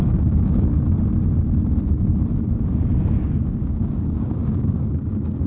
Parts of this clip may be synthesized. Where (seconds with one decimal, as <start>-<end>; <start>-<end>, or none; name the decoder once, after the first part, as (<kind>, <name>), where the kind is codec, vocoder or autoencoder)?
0.0-0.7 (codec, DAC); 3.1-5.5

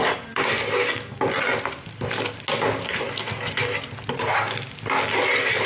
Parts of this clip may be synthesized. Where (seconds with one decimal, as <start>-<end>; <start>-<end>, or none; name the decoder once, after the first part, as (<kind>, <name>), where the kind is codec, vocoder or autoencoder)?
none

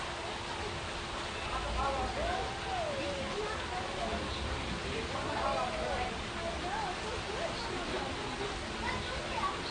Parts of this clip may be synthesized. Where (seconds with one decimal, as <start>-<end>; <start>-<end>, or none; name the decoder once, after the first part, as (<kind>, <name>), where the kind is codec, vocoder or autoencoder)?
none

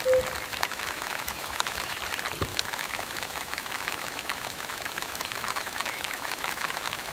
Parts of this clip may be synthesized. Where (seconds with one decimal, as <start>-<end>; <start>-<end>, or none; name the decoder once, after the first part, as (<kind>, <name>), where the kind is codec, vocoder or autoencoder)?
0.5-2.0 (autoencoder, DAC-VAE); 2.5-7.1

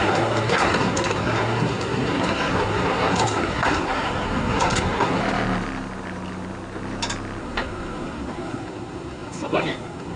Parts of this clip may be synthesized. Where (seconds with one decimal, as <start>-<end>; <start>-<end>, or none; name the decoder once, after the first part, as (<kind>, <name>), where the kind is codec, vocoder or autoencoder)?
0.0-5.2 (codec, SNAC); 7.4-10.2

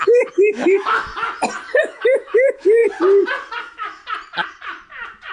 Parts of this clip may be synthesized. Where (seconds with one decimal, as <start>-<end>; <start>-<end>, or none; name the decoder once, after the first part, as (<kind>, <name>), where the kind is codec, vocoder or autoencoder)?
0.0-1.1 (autoencoder, DAC-VAE); 1.8-2.8; 3.6-4.0